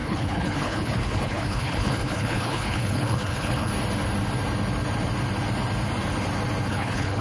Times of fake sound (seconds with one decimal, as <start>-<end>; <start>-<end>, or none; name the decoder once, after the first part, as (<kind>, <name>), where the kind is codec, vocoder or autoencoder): 0.0-3.7 (codec, HILCodec); 6.7-7.2